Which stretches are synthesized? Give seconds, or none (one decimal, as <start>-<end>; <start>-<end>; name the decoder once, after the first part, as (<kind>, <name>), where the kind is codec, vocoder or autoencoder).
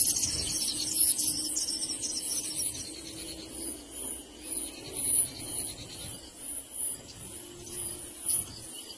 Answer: 0.0-2.3 (vocoder, Vocos); 5.2-6.5; 7.6-9.0